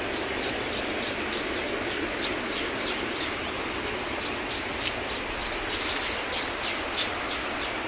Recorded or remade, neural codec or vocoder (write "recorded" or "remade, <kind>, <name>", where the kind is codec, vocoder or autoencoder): recorded